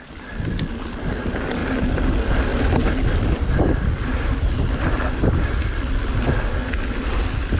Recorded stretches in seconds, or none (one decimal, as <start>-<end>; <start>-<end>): 0.0-2.5; 6.2-7.6